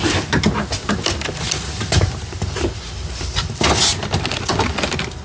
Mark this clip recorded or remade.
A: recorded